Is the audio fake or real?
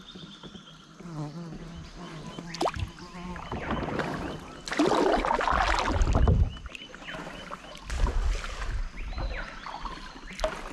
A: real